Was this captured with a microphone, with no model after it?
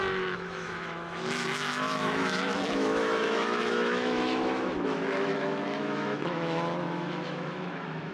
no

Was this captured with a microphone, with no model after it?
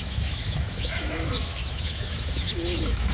no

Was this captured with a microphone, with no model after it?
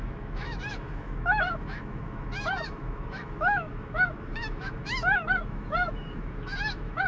no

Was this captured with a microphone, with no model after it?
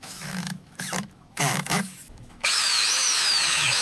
no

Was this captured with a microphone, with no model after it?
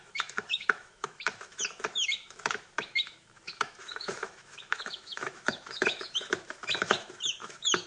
no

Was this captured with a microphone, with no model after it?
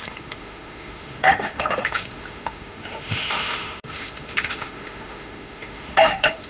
no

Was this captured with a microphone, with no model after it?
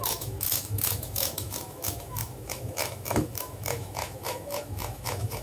no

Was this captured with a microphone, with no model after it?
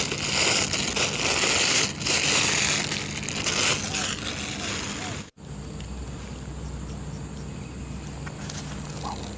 yes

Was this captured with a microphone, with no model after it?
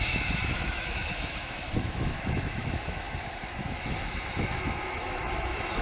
no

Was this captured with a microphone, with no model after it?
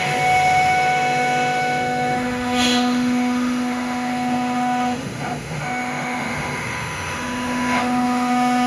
no